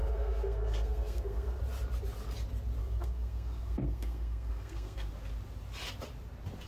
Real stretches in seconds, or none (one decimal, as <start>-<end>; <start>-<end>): 1.6-2.8; 5.1-6.7